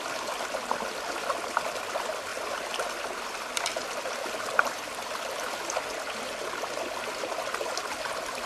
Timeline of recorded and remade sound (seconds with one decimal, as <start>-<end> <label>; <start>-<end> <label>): 0.0-8.5 recorded